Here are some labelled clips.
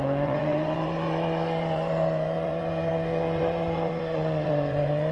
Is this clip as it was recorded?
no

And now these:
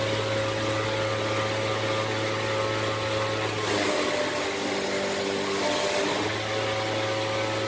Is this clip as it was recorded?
yes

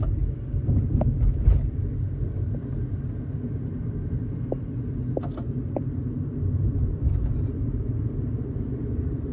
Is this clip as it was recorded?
yes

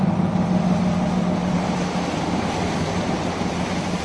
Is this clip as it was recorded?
yes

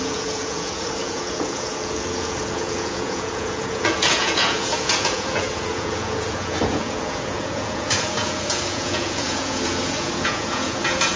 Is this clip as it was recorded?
no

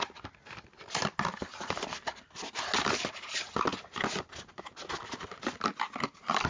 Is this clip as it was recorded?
yes